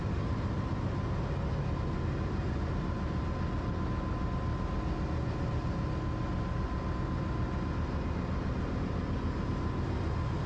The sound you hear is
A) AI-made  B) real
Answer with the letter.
B